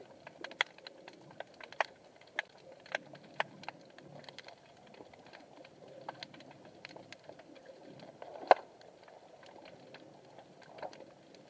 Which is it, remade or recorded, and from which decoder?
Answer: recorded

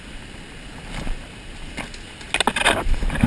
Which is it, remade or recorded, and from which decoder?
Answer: recorded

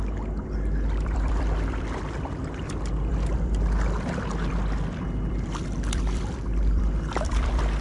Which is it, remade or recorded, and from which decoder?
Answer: remade, vocoder, BigVGAN v2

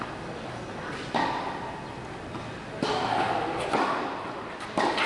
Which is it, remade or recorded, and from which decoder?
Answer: recorded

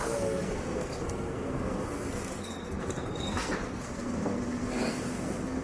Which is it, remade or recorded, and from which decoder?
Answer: remade, codec, SNAC